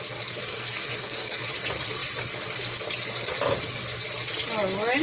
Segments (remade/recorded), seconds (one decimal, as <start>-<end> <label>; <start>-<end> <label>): 0.0-0.5 recorded; 0.5-1.4 remade; 1.4-5.0 recorded